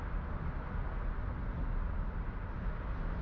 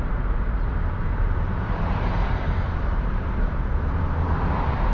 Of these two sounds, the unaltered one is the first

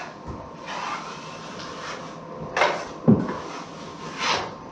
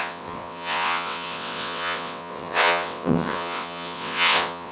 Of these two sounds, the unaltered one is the first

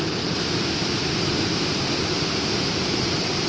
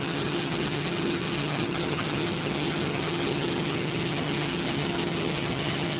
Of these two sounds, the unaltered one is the first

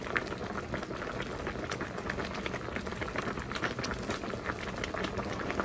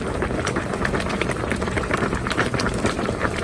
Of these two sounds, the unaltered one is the first